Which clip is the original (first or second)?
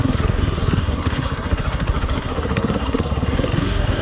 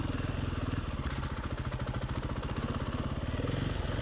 second